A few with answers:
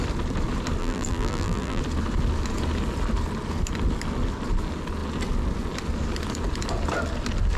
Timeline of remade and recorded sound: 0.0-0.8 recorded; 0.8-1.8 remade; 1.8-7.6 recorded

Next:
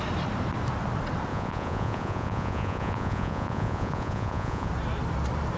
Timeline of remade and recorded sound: 0.0-1.3 recorded; 1.3-4.7 remade; 4.7-5.6 recorded